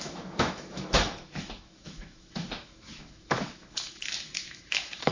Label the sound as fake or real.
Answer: fake